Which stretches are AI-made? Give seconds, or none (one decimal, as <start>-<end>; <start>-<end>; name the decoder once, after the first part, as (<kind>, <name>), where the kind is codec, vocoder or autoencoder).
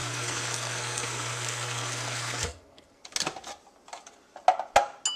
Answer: 0.0-3.0 (codec, SNAC)